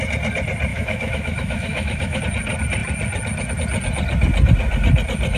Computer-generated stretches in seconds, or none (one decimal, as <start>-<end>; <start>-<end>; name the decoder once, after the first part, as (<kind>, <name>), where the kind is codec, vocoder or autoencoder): 0.7-2.2 (autoencoder, DAC-VAE)